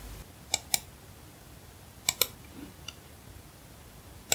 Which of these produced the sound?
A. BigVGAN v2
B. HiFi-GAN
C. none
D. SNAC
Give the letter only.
C